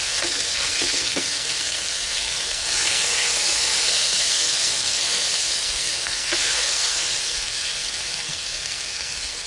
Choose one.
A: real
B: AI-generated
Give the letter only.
B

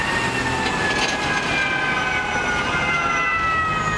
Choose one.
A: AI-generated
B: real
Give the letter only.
B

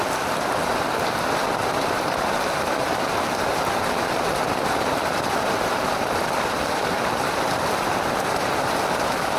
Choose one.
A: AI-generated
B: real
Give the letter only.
A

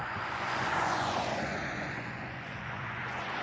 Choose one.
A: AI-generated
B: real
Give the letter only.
A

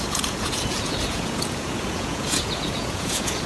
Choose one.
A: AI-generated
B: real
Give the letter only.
A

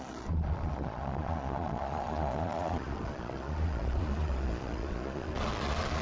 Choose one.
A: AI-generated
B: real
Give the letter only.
A